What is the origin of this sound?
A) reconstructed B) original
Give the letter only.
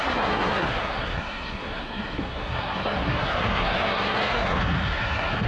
A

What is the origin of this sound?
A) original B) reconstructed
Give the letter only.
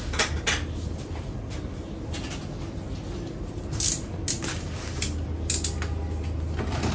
A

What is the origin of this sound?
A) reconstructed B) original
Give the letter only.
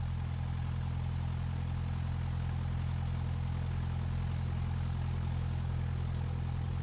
B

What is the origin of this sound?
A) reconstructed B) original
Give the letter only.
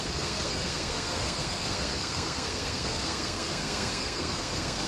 A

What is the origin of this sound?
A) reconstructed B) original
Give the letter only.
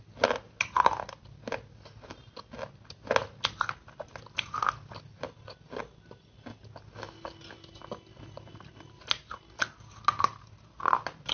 B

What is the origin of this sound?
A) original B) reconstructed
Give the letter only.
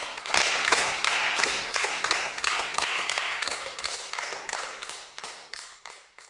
B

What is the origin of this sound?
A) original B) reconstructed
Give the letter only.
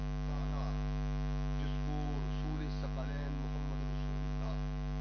A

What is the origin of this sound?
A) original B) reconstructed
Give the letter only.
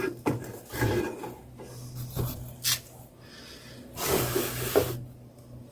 A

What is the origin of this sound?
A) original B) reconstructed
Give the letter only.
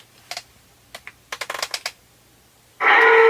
A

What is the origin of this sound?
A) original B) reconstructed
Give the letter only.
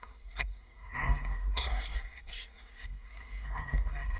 B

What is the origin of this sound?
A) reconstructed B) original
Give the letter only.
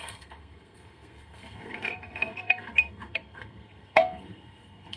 A